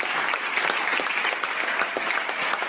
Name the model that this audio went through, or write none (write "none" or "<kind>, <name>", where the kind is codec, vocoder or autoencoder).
none